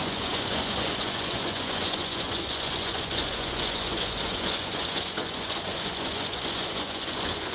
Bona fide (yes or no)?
no